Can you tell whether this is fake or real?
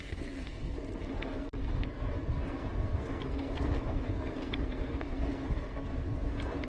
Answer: fake